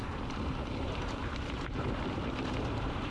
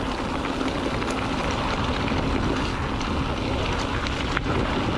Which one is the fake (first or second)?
first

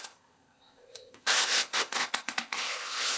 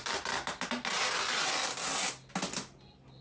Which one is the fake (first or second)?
first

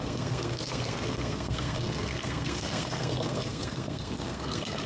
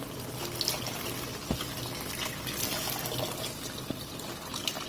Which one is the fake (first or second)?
first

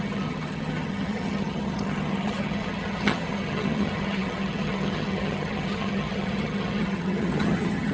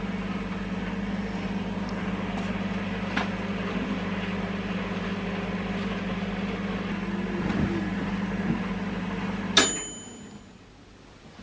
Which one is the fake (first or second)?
first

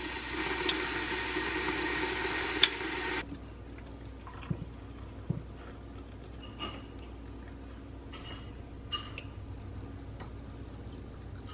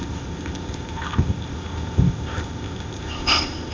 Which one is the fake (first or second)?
second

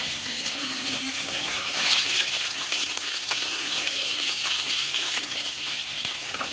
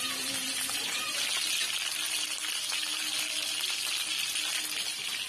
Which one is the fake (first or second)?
first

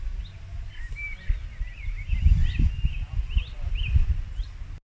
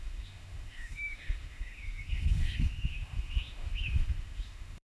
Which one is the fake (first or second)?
second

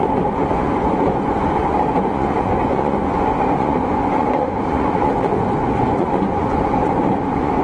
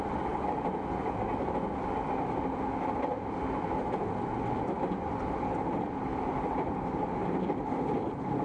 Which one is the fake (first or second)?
first